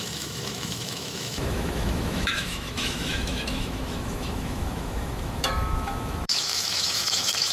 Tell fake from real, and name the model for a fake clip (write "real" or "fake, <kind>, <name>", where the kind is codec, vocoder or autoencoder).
fake, autoencoder, DAC-VAE